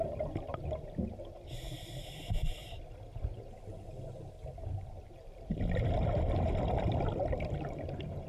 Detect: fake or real real